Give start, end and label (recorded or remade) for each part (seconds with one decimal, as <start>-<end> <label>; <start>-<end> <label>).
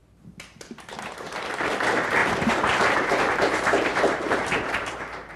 0.0-2.2 recorded; 2.2-5.4 remade